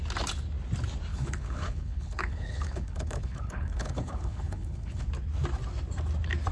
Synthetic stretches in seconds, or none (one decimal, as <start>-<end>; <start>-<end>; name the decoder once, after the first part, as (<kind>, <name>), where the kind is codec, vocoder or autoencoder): 1.1-5.0 (codec, HILCodec)